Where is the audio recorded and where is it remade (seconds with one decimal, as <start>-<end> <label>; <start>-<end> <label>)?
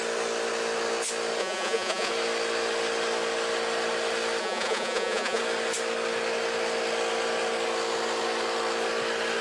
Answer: 0.0-1.4 recorded; 1.4-2.1 remade; 2.1-4.4 recorded; 4.4-5.4 remade; 5.4-9.4 recorded